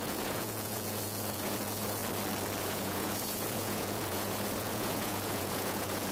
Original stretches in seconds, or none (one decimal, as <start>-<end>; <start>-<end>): 2.0-2.6